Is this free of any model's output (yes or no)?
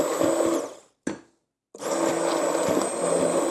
yes